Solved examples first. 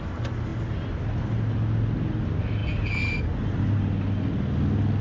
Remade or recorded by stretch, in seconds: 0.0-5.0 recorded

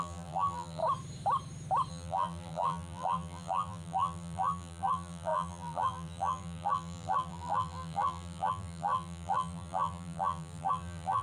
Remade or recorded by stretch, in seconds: 0.0-0.8 remade; 0.8-1.9 recorded; 1.9-11.2 remade

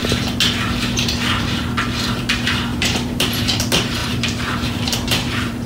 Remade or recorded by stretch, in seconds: 0.0-2.7 recorded; 2.7-3.6 remade; 3.6-4.0 recorded; 4.0-5.7 remade

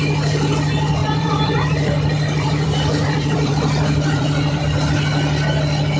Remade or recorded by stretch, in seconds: 0.0-1.0 recorded; 1.0-4.6 remade; 4.6-6.0 recorded

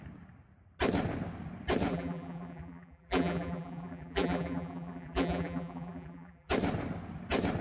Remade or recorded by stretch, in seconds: 0.0-1.9 recorded; 1.9-6.5 remade; 6.5-7.6 recorded

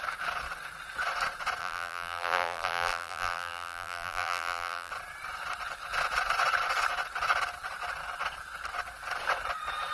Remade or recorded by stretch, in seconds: 0.0-1.6 recorded; 1.6-4.9 remade; 4.9-9.9 recorded

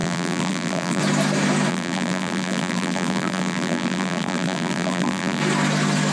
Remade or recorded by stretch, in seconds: 0.0-1.0 remade; 1.0-1.7 recorded; 1.7-5.4 remade; 5.4-6.1 recorded

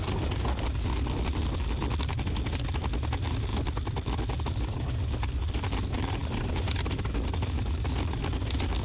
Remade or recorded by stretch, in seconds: 0.0-8.8 recorded